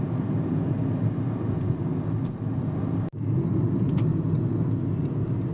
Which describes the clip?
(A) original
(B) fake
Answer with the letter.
A